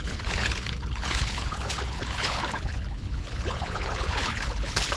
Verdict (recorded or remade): remade